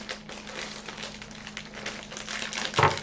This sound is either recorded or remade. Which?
recorded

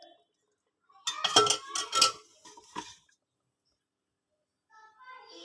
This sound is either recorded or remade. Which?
recorded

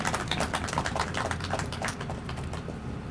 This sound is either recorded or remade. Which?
remade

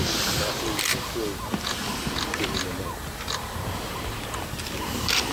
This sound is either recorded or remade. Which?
recorded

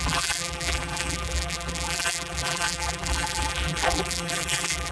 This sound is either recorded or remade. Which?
remade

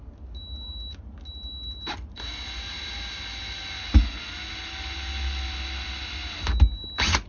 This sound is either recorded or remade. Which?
recorded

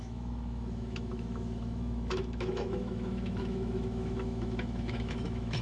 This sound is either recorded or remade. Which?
remade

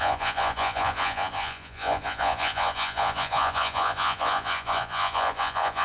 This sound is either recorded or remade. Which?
remade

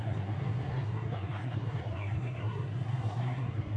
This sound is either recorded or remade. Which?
remade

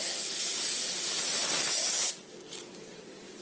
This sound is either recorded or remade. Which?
remade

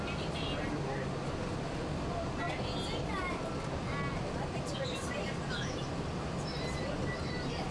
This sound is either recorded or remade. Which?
recorded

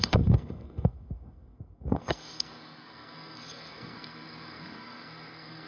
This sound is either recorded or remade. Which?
remade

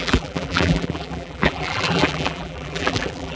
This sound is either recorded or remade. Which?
remade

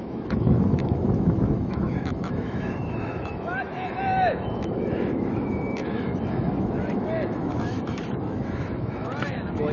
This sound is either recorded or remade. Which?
remade